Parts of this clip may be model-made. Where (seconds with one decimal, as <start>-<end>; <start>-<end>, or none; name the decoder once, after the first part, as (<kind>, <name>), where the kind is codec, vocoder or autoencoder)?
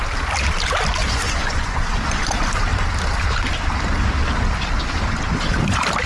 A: 1.0-2.2 (vocoder, Vocos)